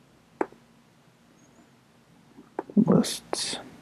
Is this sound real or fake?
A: real